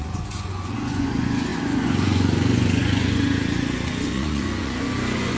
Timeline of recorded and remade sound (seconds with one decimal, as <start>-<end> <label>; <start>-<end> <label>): 0.0-5.4 remade